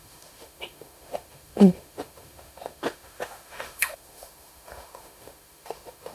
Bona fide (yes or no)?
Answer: no